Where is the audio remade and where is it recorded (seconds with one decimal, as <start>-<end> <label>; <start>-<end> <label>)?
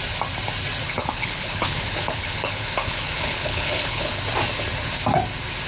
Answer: 0.0-0.8 recorded; 0.8-4.2 remade; 4.2-5.7 recorded